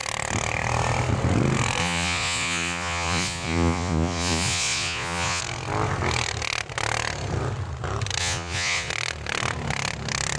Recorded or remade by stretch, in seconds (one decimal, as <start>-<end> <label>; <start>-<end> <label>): 0.0-1.8 recorded; 1.8-5.4 remade; 5.4-8.2 recorded; 8.2-8.9 remade; 8.9-10.4 recorded